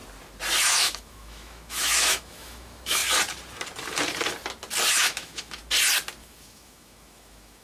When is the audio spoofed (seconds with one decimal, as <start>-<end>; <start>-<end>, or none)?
0.6-3.0; 4.9-5.6; 6.2-7.6